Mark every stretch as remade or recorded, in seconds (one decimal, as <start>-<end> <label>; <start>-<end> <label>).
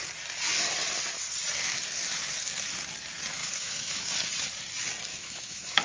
0.0-3.4 recorded; 3.4-4.1 remade; 4.1-5.1 recorded; 5.1-5.8 remade